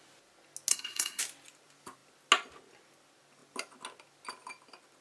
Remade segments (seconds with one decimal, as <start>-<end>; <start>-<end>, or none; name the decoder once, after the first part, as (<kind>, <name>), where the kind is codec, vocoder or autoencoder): 0.7-1.2 (codec, SNAC)